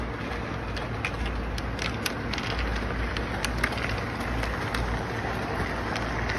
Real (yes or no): yes